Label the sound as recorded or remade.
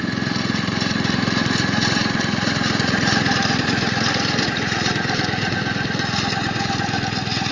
remade